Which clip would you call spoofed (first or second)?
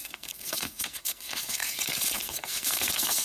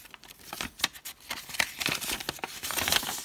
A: first